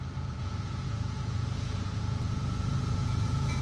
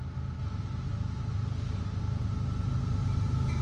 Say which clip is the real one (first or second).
second